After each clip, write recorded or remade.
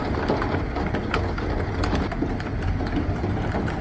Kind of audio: recorded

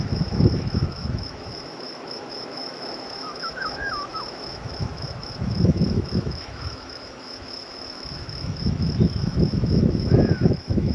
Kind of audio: remade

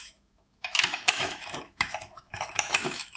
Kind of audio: remade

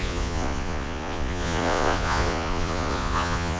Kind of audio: remade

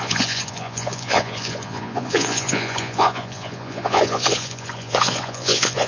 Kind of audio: remade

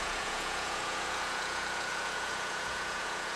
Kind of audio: remade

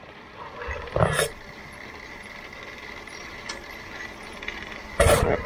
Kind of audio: recorded